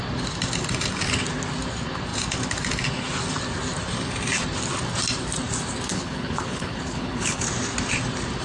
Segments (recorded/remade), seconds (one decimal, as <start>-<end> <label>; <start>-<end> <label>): 0.0-5.9 recorded; 5.9-7.5 remade; 7.5-8.4 recorded